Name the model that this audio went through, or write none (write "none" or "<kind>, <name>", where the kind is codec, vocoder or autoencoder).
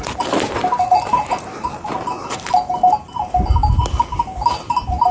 none